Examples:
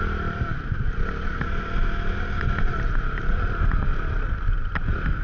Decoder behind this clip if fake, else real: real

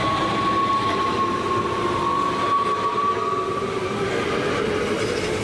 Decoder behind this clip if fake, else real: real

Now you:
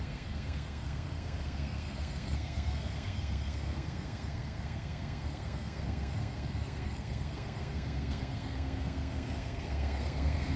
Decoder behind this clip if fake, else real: fake, codec, SNAC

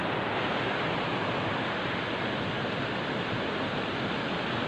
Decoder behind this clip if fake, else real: real